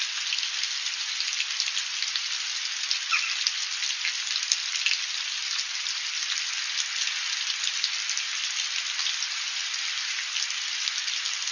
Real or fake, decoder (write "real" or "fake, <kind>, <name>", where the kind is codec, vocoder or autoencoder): real